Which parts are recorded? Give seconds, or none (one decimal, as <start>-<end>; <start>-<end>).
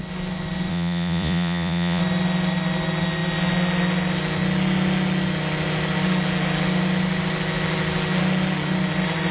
0.0-0.7; 2.0-9.3